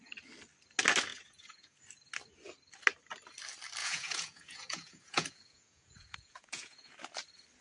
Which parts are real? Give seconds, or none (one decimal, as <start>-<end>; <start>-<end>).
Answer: 0.0-1.1; 1.8-3.8; 6.9-7.6